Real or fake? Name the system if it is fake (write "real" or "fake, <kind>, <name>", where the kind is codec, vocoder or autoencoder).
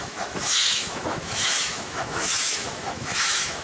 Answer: fake, autoencoder, DAC-VAE